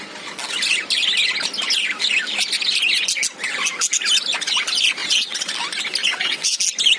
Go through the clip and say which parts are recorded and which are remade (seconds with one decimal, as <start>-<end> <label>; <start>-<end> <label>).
0.0-5.0 recorded; 5.0-5.5 remade; 5.5-6.0 recorded; 6.0-6.6 remade; 6.6-7.0 recorded